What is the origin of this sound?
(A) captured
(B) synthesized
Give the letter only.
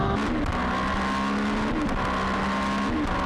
A